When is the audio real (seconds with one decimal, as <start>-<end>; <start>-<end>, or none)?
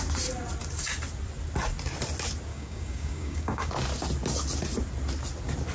0.0-2.5; 3.7-5.7